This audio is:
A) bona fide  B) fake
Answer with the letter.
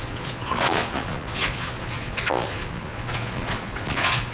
B